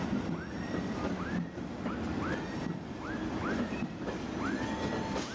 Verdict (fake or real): real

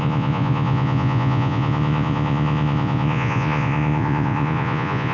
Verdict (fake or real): fake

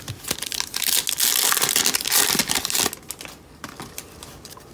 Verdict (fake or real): real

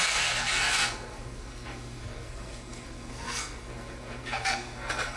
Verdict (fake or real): fake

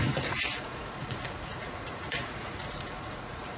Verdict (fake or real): fake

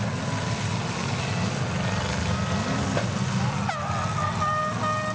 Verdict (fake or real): real